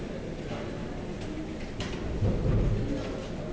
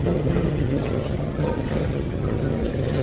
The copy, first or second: second